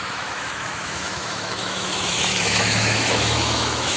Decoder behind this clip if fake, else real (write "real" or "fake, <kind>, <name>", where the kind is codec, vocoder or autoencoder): fake, autoencoder, DAC-VAE